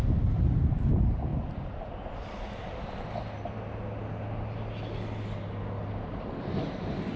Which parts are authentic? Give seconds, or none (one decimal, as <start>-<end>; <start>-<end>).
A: 0.0-7.2